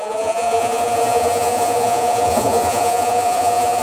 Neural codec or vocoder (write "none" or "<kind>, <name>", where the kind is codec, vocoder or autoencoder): vocoder, Vocos